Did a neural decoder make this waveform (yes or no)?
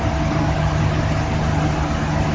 no